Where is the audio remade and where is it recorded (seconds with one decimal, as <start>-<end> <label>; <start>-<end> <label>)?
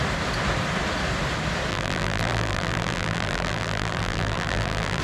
0.0-1.7 recorded; 1.7-5.0 remade